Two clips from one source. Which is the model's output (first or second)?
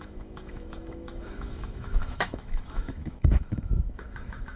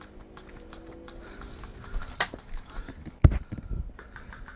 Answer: first